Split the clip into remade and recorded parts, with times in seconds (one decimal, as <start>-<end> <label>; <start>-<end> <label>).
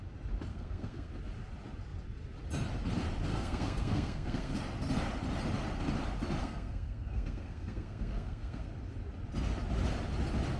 0.0-0.5 recorded; 0.5-1.1 remade; 1.1-3.3 recorded; 3.3-4.5 remade; 4.5-6.4 recorded; 6.4-8.7 remade; 8.7-10.6 recorded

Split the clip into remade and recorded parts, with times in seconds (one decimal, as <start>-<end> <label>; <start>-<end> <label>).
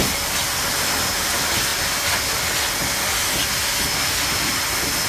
0.0-5.1 recorded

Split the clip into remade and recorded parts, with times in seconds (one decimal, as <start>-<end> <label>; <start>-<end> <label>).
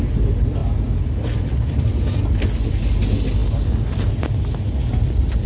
0.0-5.5 recorded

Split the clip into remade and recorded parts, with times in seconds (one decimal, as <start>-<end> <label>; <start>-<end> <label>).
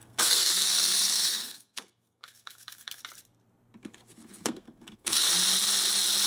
0.0-3.0 remade; 3.0-3.8 recorded; 3.8-5.3 remade; 5.3-6.3 recorded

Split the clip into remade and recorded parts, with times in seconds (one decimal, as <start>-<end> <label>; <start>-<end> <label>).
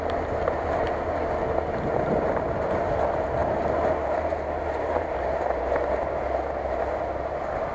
0.0-7.7 recorded